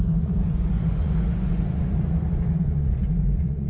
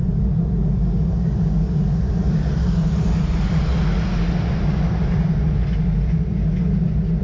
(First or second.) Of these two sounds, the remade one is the first